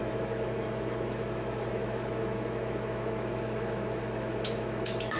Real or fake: fake